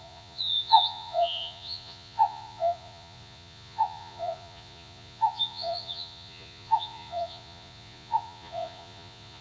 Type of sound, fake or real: fake